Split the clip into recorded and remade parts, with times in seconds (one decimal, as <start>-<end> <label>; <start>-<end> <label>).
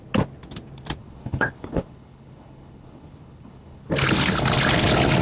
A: 0.0-1.0 recorded; 1.0-3.9 remade; 3.9-5.2 recorded